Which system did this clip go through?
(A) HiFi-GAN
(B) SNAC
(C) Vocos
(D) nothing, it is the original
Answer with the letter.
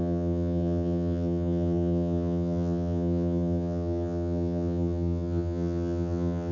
A